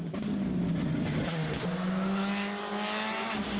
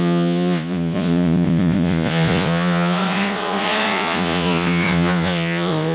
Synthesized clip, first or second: second